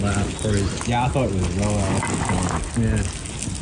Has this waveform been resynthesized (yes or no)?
no